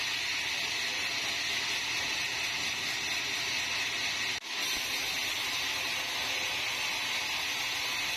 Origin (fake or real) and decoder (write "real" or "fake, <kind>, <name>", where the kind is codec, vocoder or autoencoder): real